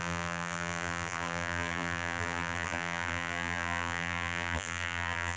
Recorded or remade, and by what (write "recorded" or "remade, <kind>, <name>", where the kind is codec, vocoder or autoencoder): remade, vocoder, BigVGAN v2